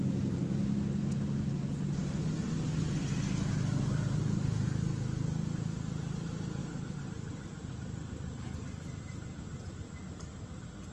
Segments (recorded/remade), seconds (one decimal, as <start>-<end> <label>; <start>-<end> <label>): 0.0-6.6 recorded; 6.6-7.7 remade; 7.7-10.9 recorded